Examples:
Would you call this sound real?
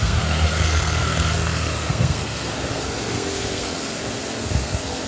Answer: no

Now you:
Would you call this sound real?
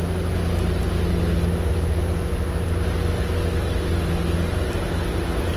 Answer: yes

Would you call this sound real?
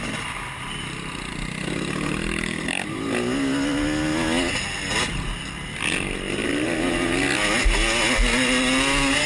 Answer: yes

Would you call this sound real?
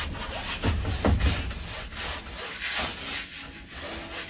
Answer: yes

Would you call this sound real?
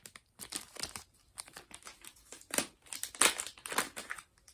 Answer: yes